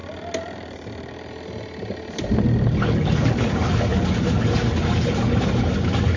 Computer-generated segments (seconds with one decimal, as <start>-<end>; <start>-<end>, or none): none